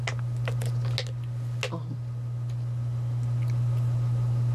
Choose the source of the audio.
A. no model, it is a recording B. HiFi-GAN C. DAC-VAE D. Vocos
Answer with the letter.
A